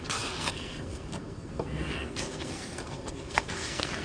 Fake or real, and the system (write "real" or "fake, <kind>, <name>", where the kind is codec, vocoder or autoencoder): fake, codec, SNAC